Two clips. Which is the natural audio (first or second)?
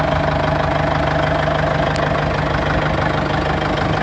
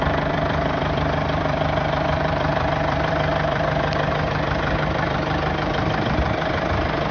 first